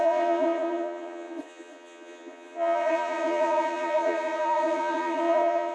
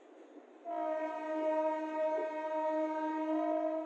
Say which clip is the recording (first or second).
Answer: second